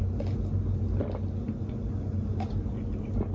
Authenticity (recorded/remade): recorded